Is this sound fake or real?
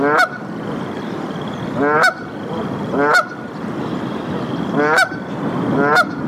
real